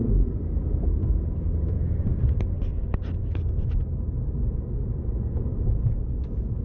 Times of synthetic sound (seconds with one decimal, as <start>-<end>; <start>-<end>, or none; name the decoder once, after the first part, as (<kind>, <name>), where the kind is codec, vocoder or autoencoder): 0.0-1.0 (vocoder, BigVGAN v2); 1.6-2.7; 5.1-6.6

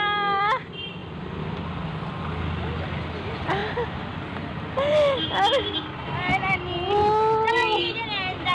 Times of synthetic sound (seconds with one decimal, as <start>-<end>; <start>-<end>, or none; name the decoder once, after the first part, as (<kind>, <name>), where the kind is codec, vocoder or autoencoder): none

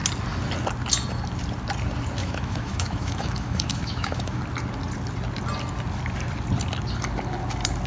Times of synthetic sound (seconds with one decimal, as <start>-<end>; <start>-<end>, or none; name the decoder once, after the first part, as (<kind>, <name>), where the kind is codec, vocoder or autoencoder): 2.2-4.4 (autoencoder, DAC-VAE)

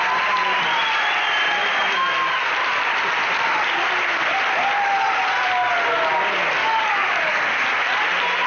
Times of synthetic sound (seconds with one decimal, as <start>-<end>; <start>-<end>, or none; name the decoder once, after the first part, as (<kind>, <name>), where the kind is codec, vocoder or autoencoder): 6.6-7.4 (codec, DAC)

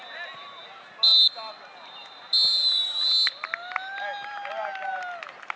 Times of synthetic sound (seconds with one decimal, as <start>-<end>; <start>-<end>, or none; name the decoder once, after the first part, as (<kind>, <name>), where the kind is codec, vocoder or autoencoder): none